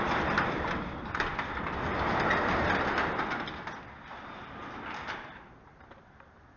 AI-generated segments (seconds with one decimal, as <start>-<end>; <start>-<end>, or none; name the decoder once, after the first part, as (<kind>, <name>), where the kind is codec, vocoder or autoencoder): none